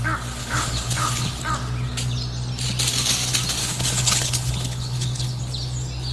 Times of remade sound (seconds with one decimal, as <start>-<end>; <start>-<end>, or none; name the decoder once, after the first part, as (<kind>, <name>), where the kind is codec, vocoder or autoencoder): 0.4-1.4 (codec, HILCodec); 3.6-5.4